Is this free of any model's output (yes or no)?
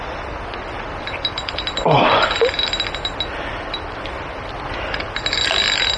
yes